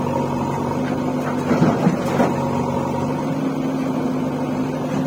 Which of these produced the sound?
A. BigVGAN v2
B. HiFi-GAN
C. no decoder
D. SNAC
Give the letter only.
C